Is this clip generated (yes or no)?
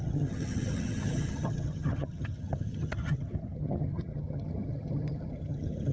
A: yes